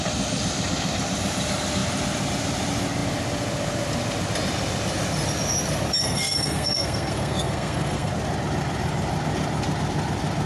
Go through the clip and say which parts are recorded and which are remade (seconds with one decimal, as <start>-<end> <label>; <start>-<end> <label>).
0.0-6.0 recorded; 6.0-8.1 remade; 8.1-10.5 recorded